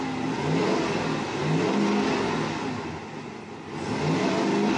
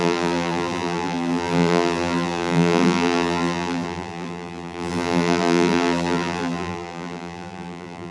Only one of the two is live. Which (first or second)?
first